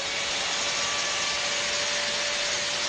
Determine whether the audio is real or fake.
real